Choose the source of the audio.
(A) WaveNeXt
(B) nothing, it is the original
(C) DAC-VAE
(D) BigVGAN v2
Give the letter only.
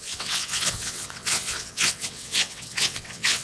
A